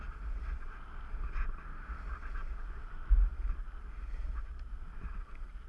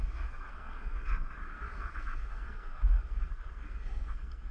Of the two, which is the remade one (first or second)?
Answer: second